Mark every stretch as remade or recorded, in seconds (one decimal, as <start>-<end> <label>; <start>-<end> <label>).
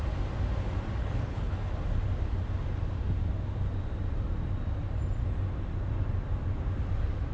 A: 0.0-1.0 recorded; 1.0-1.7 remade; 1.7-7.3 recorded